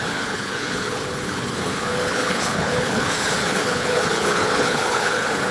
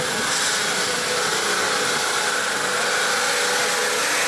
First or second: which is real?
second